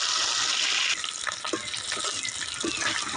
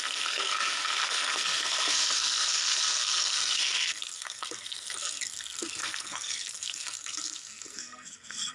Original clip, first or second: first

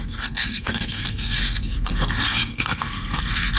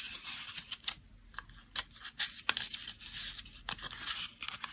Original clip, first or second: second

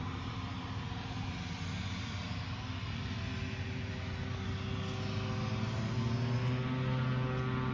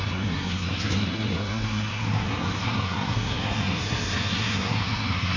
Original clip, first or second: first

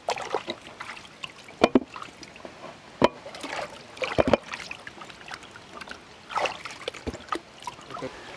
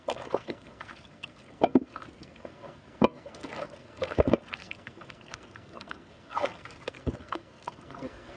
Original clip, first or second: first